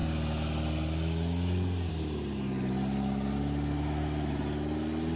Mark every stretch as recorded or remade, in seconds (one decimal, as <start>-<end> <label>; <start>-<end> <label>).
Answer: 0.0-5.2 recorded